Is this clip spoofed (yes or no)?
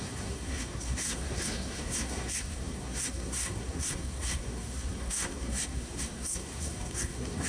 yes